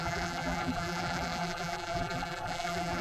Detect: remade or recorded remade